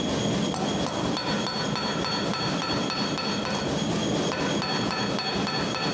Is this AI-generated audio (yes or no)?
no